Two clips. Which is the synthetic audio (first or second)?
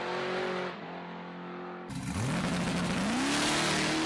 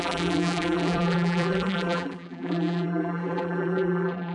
second